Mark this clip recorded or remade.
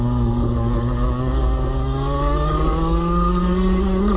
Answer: remade